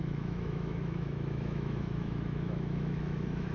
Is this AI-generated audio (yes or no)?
yes